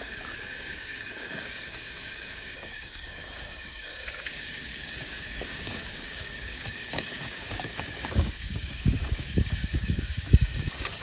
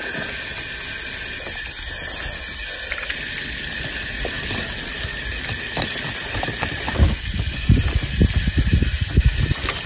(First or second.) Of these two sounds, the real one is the second